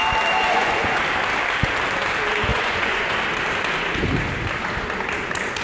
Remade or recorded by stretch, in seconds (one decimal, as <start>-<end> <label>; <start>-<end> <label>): 0.0-0.4 recorded; 0.4-1.0 remade; 1.0-2.5 recorded; 2.5-3.2 remade; 3.2-5.6 recorded